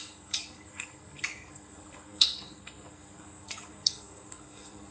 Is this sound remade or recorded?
remade